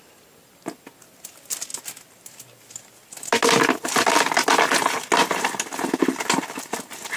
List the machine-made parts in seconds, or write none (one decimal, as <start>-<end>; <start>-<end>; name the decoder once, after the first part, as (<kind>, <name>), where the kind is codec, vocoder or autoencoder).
none